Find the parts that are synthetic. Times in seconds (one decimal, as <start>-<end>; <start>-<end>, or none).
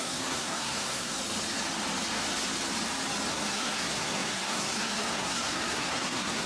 0.0-1.2; 3.3-6.5